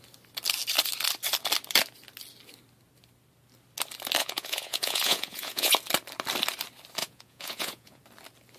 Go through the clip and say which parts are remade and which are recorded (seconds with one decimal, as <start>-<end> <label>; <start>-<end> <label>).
0.0-4.2 recorded; 4.2-5.7 remade; 5.7-7.0 recorded; 7.0-8.0 remade; 8.0-8.6 recorded